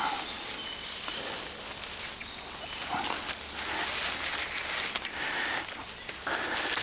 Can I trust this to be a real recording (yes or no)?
yes